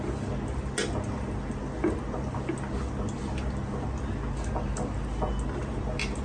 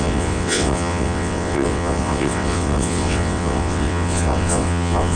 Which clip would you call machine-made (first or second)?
second